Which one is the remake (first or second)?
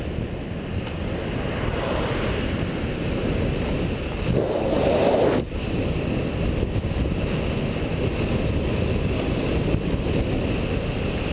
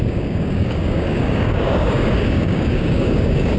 second